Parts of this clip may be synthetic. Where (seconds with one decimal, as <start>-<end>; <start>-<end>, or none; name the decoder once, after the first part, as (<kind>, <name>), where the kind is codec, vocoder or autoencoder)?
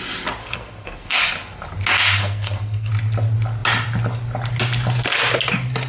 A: 0.4-1.2 (codec, SNAC); 2.2-2.9